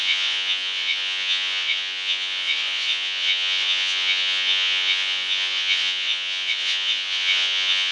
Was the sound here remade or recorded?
remade